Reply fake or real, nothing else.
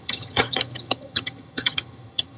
fake